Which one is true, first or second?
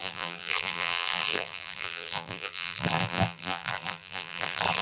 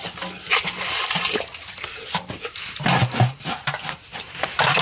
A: second